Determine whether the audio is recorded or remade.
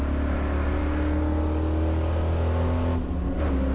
recorded